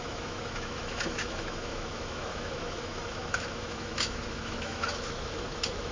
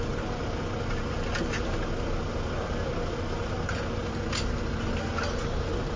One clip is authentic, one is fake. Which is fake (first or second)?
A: first